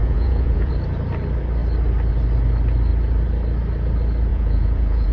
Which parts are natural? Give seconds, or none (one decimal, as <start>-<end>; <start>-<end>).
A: 0.7-4.3